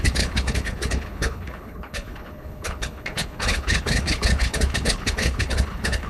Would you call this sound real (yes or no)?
no